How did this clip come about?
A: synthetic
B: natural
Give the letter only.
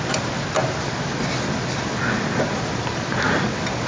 B